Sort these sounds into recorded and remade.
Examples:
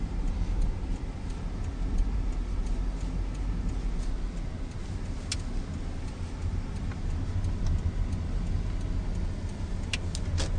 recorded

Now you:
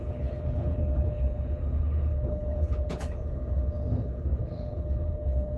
remade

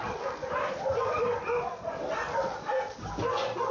recorded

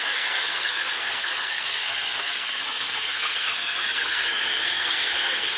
remade